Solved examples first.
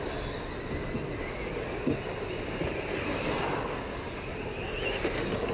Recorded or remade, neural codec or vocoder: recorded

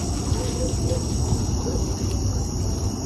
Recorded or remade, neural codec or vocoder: recorded